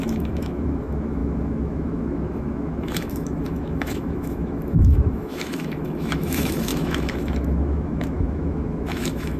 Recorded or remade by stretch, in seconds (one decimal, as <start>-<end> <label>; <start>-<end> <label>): 0.0-9.4 remade

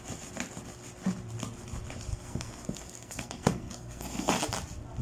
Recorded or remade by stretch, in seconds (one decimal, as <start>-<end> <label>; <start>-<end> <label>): 0.0-2.1 recorded; 2.1-4.3 remade; 4.3-5.0 recorded

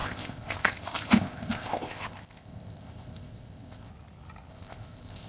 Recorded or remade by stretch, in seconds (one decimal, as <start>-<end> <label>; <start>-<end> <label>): 0.0-3.9 remade; 3.9-4.5 recorded; 4.5-5.3 remade

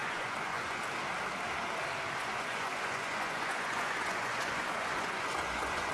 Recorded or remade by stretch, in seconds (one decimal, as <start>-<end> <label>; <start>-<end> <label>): 0.0-0.8 remade; 0.8-2.2 recorded; 2.2-5.9 remade

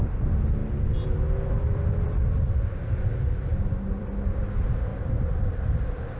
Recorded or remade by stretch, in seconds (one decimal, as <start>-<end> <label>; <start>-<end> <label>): 0.0-0.6 recorded; 0.6-2.5 remade; 2.5-3.5 recorded; 3.5-4.0 remade; 4.0-4.9 recorded; 4.9-6.2 remade

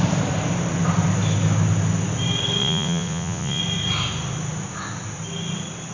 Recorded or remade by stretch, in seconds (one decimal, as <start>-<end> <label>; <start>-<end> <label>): 0.0-2.6 recorded; 2.6-3.6 remade; 3.6-5.9 recorded

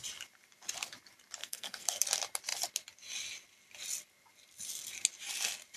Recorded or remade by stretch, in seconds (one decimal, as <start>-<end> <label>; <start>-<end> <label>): 0.0-1.4 recorded; 1.4-2.0 remade; 2.0-5.8 recorded

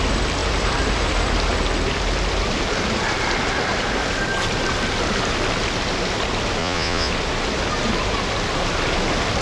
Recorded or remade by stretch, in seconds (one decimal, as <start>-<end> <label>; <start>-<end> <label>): 0.0-6.6 recorded; 6.6-7.1 remade; 7.1-9.4 recorded